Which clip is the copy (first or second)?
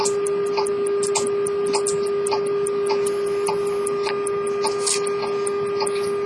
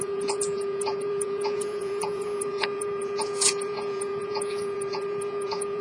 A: second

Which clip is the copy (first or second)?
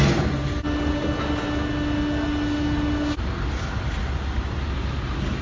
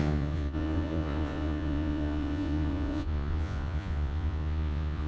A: second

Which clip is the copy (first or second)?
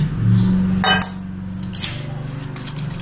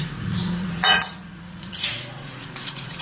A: second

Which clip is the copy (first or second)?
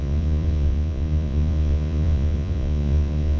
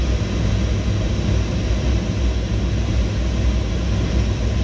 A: first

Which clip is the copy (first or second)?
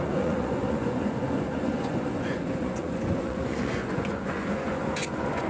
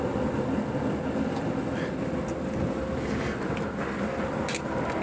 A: first